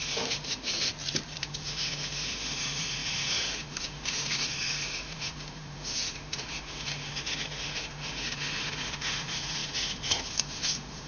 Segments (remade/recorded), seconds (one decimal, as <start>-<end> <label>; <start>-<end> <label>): 0.0-0.9 remade; 0.9-1.4 recorded; 1.4-11.1 remade